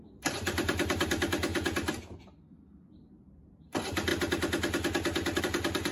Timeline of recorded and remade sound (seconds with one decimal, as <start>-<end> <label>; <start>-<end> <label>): 0.0-1.5 remade; 1.5-3.4 recorded; 3.4-4.1 remade; 4.1-5.4 recorded; 5.4-5.9 remade